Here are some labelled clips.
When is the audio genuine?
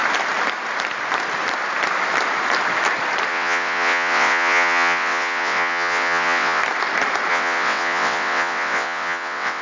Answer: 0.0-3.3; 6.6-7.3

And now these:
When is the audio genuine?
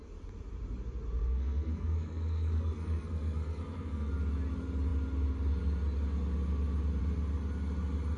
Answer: 0.0-1.2; 4.1-8.2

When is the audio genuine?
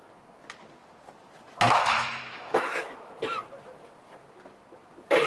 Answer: 0.0-1.8; 3.1-5.3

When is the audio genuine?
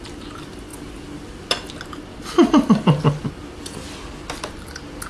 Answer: 0.0-5.1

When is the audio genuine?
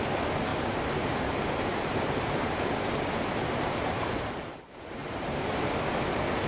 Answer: 0.0-0.5; 4.4-5.0; 5.6-6.5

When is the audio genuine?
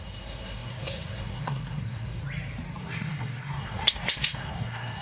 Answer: 2.2-2.8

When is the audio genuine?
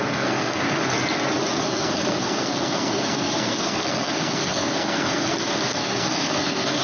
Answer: 0.8-1.6